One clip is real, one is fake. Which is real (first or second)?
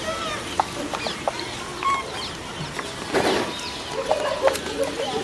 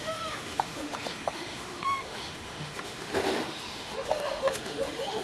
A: first